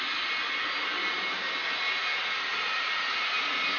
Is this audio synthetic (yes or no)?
no